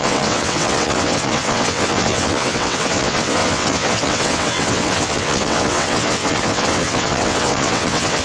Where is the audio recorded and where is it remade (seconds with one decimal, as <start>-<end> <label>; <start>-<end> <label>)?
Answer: 0.0-8.2 remade